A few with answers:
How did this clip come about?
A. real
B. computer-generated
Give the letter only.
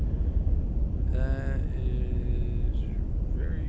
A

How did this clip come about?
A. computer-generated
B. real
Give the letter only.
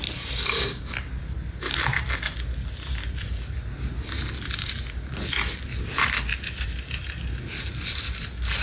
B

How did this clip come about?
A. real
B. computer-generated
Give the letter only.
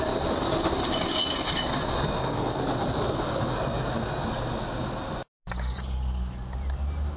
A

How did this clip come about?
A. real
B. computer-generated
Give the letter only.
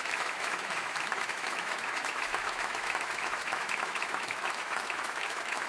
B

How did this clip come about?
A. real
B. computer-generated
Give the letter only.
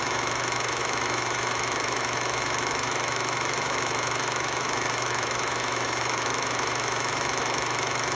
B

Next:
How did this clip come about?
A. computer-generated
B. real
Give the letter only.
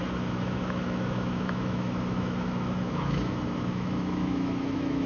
A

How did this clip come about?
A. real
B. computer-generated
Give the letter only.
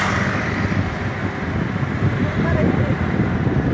A